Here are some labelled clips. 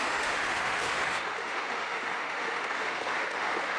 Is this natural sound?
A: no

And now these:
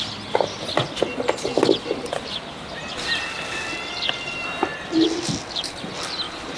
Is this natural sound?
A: yes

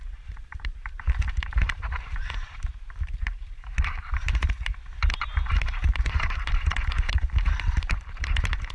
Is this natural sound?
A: no